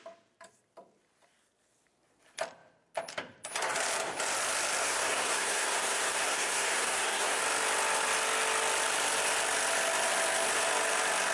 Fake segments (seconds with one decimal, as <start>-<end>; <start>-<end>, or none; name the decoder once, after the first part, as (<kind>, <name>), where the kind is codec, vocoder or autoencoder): 4.8-7.4 (codec, SNAC)